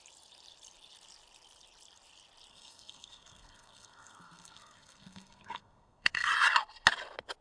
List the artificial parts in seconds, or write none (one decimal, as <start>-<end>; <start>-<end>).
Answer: 2.5-6.3